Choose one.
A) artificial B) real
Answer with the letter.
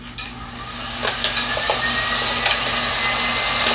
B